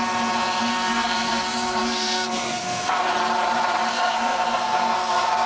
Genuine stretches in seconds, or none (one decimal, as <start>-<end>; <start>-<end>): 0.0-0.7; 3.0-3.9